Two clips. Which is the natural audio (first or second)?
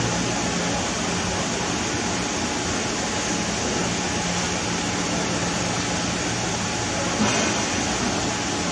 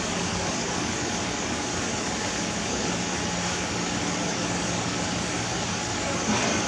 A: first